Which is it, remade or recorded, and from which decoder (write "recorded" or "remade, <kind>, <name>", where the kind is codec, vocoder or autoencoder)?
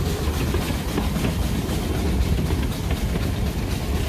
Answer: recorded